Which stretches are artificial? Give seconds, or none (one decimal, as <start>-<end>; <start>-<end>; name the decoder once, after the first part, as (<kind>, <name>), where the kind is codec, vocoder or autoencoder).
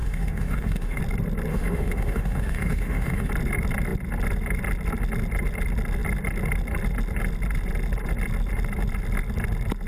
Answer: 0.0-1.0 (autoencoder, DAC-VAE); 1.5-3.3